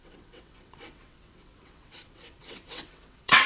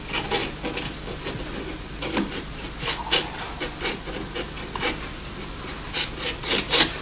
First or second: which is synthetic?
first